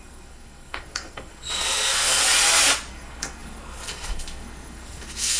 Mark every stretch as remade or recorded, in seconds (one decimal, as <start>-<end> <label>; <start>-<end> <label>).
0.0-2.2 remade; 2.2-2.9 recorded; 2.9-5.4 remade